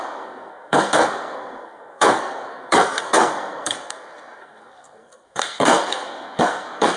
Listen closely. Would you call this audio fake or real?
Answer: fake